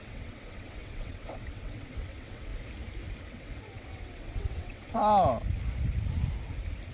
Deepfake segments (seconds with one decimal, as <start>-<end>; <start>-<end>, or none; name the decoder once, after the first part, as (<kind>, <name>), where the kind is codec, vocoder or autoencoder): 0.0-2.5 (vocoder, WaveNeXt); 3.2-5.0